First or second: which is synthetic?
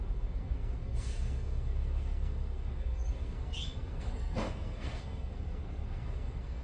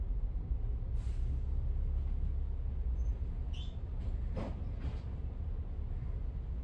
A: first